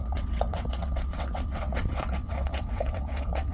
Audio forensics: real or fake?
fake